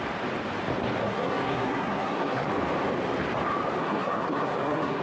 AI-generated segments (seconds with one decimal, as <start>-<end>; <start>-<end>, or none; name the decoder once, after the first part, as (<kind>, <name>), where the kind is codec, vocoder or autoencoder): 1.0-2.5 (codec, SNAC); 3.8-5.0